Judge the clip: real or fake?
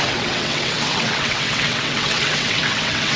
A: fake